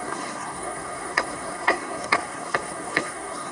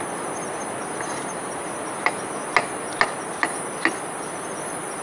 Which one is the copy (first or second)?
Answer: first